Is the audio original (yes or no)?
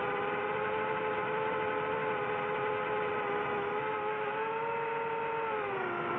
yes